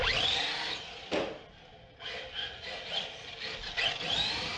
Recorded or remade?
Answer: recorded